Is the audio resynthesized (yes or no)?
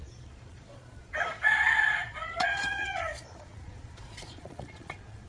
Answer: yes